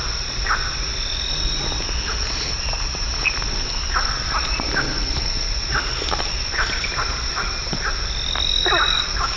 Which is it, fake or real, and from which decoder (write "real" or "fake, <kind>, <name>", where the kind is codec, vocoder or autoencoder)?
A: real